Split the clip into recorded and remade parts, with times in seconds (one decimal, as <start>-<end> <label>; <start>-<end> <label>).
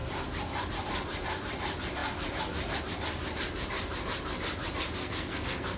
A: 0.0-5.0 recorded; 5.0-5.8 remade